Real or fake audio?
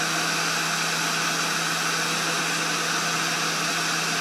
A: real